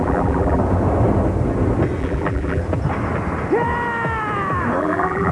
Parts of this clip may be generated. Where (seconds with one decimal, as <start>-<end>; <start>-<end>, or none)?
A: 0.0-0.6; 2.0-2.6; 4.8-5.3